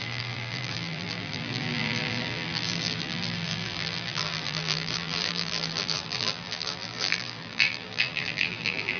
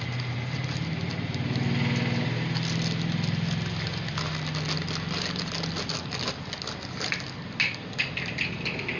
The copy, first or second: first